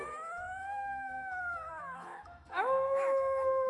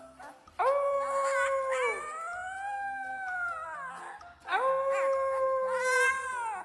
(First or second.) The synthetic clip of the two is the first